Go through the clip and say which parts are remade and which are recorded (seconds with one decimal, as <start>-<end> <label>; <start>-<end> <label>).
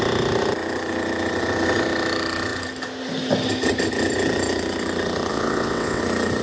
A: 0.0-5.3 recorded; 5.3-6.0 remade; 6.0-6.4 recorded